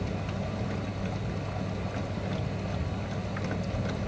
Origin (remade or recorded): recorded